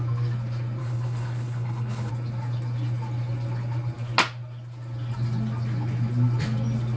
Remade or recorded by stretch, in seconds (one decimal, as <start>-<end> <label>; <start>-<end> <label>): 0.0-0.8 recorded; 0.8-2.1 remade; 2.1-7.0 recorded